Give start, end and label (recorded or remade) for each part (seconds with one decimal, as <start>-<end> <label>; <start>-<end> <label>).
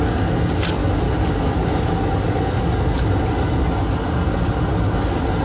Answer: 0.0-5.4 recorded